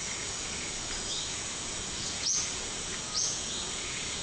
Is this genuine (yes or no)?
no